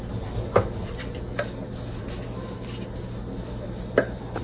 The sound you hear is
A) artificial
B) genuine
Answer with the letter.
B